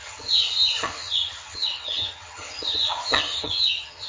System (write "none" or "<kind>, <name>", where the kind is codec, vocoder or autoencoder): vocoder, HiFi-GAN